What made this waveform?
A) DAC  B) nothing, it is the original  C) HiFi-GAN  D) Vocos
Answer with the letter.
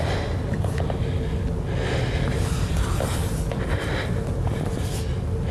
B